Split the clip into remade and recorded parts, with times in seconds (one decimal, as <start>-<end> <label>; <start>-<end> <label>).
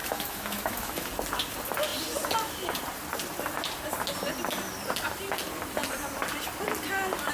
0.0-1.1 remade; 1.1-7.3 recorded